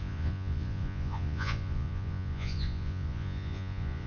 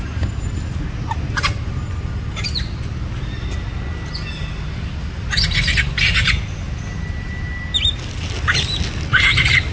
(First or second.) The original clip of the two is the second